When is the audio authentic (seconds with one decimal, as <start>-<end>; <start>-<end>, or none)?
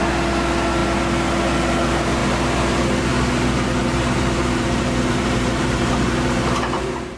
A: 0.0-3.8